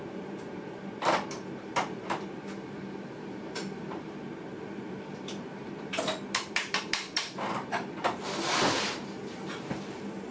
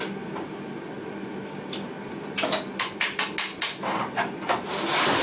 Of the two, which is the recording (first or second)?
second